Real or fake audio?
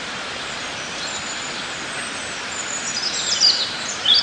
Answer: real